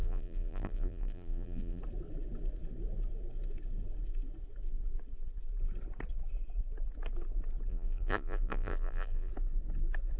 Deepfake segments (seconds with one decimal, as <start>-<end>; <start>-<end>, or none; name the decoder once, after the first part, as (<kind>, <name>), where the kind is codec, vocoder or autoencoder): 0.0-1.8 (vocoder, BigVGAN v2); 7.7-9.3